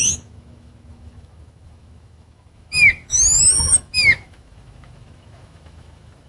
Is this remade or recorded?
remade